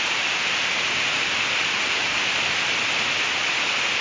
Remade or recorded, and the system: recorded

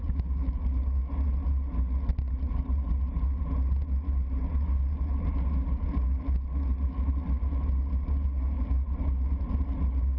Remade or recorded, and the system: recorded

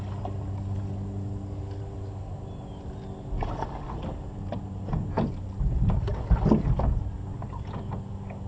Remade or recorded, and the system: recorded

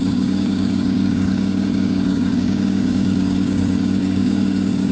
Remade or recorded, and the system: remade, codec, DAC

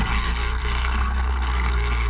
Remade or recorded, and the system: remade, codec, SNAC